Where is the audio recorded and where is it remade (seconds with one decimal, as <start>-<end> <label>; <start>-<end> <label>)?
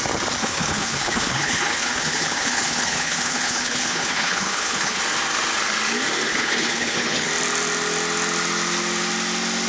0.0-0.4 recorded; 0.4-5.0 remade; 5.0-6.3 recorded; 6.3-7.3 remade; 7.3-9.7 recorded